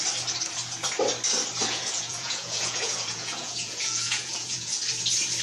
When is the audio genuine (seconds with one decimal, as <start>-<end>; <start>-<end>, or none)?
0.0-1.6; 4.8-5.4